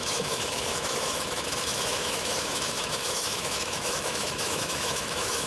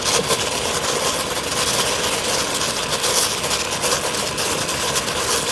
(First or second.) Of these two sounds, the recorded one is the second